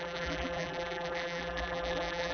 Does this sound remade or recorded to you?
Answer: remade